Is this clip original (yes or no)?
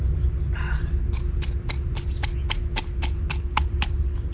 yes